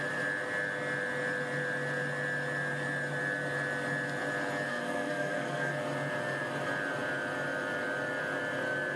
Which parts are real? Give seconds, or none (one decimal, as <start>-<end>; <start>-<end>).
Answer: 0.0-4.7; 5.7-9.0